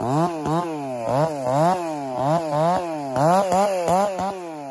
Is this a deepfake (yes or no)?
no